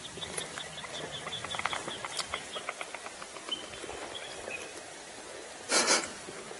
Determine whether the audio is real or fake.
real